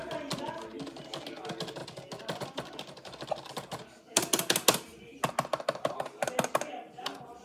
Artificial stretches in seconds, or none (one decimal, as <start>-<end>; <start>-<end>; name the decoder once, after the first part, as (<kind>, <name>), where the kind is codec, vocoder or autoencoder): none